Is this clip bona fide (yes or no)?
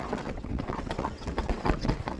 no